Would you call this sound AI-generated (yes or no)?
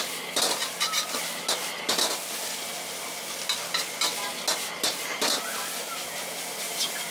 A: no